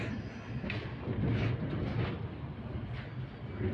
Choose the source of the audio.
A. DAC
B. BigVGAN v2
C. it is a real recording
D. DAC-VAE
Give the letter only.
C